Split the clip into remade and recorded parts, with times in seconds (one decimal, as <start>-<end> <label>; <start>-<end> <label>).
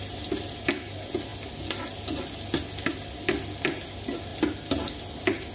0.0-5.5 recorded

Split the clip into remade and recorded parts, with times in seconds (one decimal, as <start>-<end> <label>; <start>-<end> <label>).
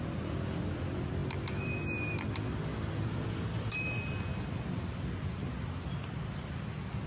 0.0-7.1 recorded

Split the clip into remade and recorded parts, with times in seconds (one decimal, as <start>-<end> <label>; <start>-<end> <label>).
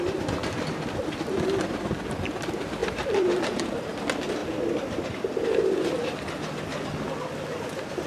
0.0-8.1 recorded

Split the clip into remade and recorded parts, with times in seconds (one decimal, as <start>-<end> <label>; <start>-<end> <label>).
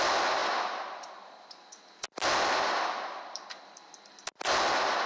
0.0-5.1 recorded